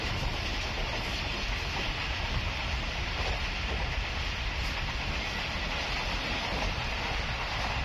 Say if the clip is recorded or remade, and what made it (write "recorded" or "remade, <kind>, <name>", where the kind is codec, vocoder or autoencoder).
recorded